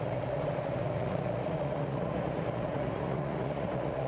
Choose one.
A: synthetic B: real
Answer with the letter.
A